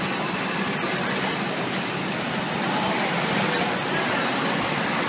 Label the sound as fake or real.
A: real